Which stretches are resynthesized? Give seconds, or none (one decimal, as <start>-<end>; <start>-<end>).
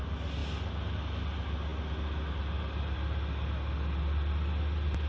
none